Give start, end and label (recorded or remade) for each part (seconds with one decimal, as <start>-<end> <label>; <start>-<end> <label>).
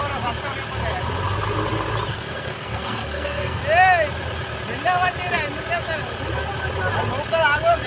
0.0-2.1 recorded; 2.1-3.6 remade; 3.6-7.9 recorded